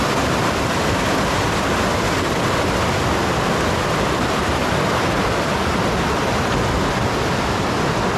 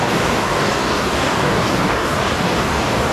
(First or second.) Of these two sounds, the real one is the first